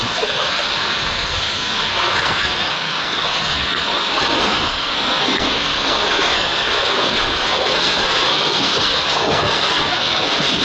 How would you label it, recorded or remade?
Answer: remade